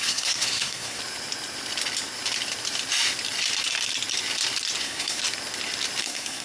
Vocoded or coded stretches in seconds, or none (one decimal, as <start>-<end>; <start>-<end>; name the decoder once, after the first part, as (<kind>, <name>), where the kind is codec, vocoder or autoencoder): 0.0-1.0 (codec, SNAC); 4.8-5.2; 6.0-6.4